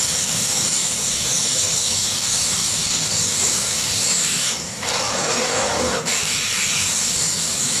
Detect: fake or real fake